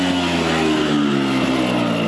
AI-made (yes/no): no